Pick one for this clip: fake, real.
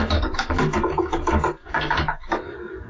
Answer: fake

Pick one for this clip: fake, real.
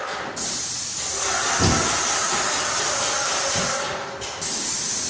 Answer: real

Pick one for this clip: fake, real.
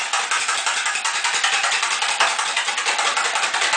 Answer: real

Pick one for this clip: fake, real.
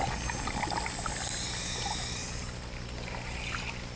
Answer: real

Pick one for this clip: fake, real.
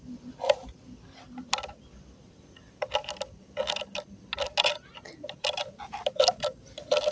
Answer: real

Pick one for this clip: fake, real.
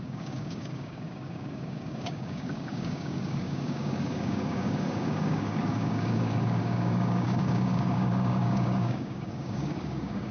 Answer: fake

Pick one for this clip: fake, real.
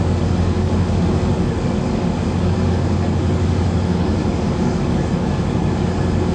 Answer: fake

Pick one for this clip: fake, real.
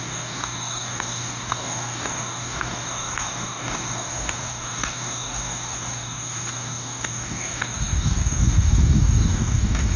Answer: fake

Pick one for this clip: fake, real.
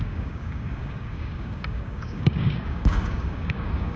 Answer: fake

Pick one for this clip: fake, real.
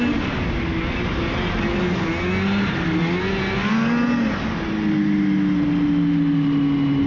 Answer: real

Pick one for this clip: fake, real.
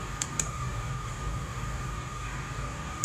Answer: fake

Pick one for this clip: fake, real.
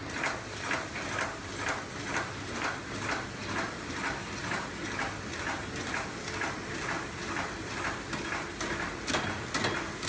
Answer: real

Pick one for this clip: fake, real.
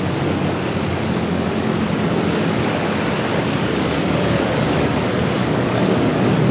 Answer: fake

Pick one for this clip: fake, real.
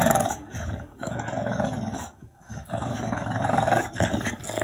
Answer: fake